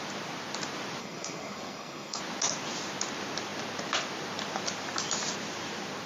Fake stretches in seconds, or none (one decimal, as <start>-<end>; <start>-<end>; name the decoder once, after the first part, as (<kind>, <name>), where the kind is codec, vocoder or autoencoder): 1.0-2.2 (codec, SNAC)

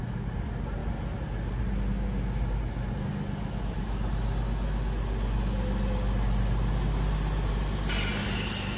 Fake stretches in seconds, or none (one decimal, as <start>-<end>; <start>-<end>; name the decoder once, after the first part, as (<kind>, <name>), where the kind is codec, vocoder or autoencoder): none